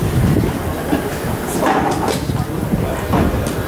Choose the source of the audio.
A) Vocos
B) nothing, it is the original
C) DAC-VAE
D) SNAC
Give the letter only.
B